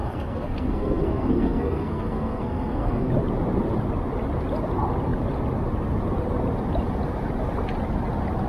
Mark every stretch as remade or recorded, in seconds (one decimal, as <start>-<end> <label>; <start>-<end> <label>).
0.0-3.1 remade; 3.1-8.5 recorded